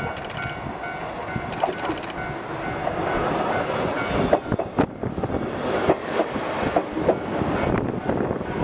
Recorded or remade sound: recorded